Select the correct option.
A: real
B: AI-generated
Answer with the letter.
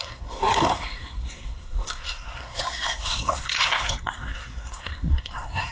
B